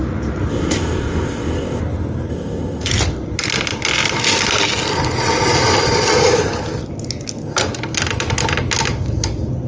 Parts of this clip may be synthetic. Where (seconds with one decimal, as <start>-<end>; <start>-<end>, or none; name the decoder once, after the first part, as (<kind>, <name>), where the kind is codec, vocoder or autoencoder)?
0.5-1.8 (codec, ZipCodec); 2.3-2.9